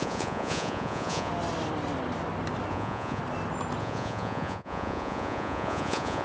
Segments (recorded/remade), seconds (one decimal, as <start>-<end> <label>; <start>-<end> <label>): 0.0-1.3 remade; 1.3-2.7 recorded; 2.7-3.2 remade; 3.2-3.8 recorded; 3.8-6.2 remade